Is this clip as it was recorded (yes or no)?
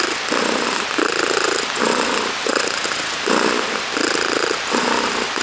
yes